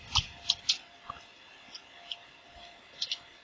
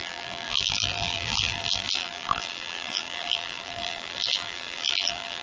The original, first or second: first